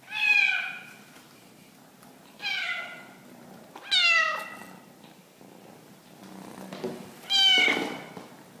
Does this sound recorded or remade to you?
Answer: recorded